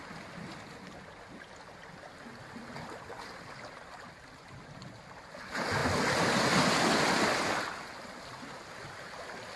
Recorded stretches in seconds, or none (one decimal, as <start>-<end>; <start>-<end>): 0.0-9.6